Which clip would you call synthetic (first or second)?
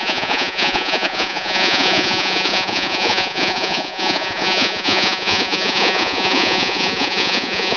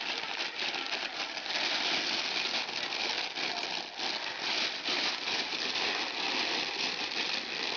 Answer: first